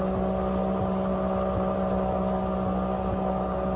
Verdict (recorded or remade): recorded